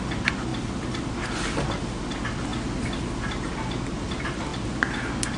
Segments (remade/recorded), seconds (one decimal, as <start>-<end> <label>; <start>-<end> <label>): 0.0-0.5 recorded; 0.5-1.1 remade; 1.1-2.5 recorded; 2.5-3.2 remade; 3.2-5.4 recorded